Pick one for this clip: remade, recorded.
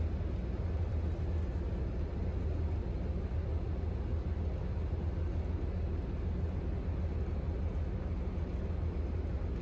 recorded